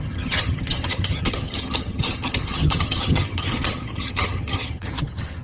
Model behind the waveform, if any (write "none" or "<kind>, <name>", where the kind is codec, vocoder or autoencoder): vocoder, HiFi-GAN